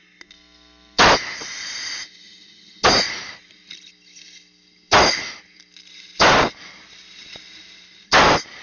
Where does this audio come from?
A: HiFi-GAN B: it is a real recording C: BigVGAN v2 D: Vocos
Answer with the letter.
B